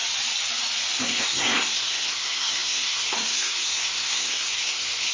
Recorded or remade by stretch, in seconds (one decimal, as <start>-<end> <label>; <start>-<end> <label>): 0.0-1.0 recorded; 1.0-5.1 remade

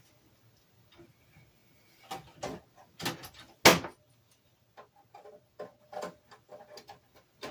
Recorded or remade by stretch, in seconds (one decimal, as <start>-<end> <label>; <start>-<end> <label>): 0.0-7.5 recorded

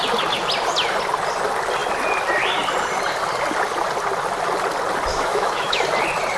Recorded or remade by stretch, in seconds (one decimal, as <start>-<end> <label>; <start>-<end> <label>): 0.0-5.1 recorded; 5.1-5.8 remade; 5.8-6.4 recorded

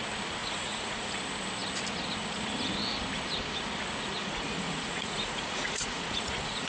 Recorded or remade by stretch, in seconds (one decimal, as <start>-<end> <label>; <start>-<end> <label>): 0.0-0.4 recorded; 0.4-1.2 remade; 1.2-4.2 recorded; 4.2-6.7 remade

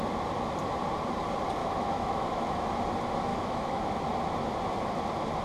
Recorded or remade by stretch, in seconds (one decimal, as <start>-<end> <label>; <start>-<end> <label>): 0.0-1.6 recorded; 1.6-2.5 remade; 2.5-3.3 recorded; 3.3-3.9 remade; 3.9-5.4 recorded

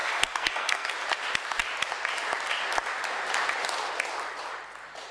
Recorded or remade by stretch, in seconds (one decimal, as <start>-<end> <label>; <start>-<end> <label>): 0.0-0.9 remade; 0.9-5.1 recorded

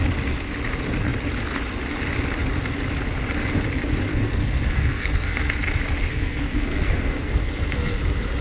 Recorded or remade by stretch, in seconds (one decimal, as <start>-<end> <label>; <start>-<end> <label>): 0.0-4.1 recorded; 4.1-5.5 remade; 5.5-6.1 recorded; 6.1-8.0 remade; 8.0-8.4 recorded